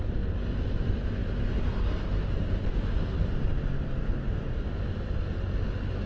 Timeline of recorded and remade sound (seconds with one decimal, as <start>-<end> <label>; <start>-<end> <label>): 0.0-6.1 recorded